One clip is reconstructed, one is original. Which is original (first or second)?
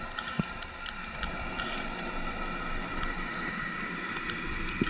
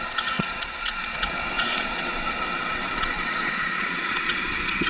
first